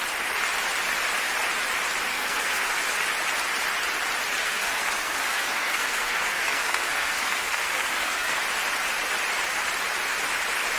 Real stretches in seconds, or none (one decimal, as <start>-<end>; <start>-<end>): 0.0-2.1; 2.8-4.4; 8.4-10.8